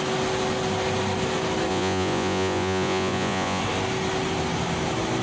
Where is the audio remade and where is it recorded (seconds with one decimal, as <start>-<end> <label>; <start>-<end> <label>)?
0.0-1.7 recorded; 1.7-3.6 remade; 3.6-5.2 recorded